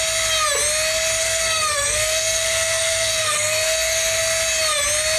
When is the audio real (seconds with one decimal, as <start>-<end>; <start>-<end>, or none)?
0.0-1.2; 4.2-5.2